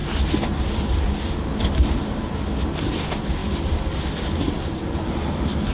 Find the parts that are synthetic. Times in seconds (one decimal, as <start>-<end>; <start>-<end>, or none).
none